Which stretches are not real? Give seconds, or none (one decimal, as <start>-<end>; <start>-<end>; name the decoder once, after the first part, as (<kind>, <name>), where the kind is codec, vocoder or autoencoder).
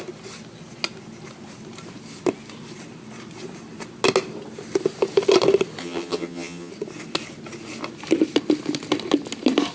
5.8-6.7 (vocoder, HiFi-GAN)